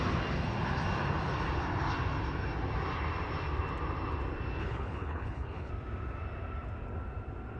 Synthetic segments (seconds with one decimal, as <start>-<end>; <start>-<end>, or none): 4.6-5.7